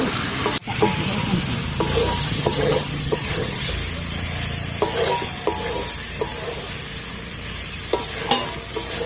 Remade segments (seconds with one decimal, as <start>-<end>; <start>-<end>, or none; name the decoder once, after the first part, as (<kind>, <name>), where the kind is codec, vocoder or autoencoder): 2.2-3.7 (vocoder, HiFi-GAN)